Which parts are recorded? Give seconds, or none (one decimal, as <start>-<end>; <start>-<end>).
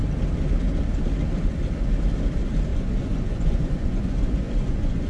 0.0-2.7